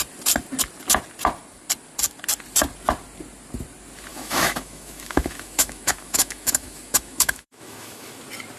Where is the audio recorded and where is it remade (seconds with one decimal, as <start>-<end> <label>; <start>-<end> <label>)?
0.0-4.1 recorded; 4.1-8.2 remade; 8.2-8.6 recorded